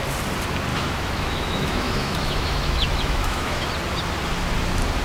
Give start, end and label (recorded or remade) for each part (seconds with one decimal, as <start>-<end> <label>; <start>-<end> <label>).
0.0-0.7 recorded; 0.7-3.7 remade; 3.7-5.0 recorded